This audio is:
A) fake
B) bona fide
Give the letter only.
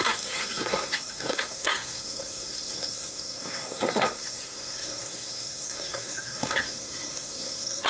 A